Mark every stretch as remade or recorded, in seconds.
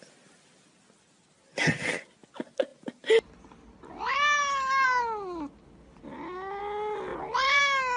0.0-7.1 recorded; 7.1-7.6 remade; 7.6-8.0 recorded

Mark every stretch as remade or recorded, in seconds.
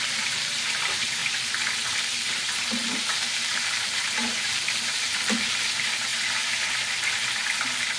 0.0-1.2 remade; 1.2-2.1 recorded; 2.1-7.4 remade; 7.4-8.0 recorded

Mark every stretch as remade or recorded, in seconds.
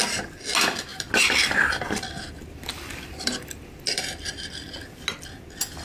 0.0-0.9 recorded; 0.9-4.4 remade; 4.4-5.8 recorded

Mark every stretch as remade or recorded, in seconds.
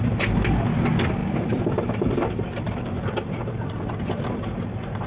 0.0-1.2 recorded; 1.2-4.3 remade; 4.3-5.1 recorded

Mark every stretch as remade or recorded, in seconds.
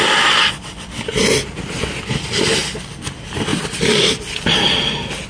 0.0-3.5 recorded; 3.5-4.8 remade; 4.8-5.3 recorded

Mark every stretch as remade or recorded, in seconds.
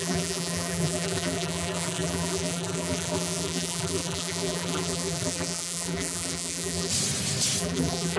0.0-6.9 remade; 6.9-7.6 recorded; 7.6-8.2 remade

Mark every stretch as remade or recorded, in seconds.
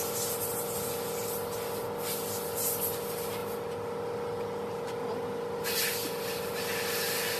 0.0-7.4 recorded